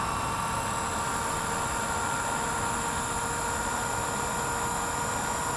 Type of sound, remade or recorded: recorded